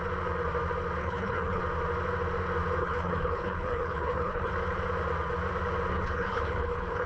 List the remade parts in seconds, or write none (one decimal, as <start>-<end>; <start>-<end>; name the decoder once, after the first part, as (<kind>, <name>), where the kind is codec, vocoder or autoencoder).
1.0-1.6 (codec, HILCodec); 2.8-4.5; 5.9-7.1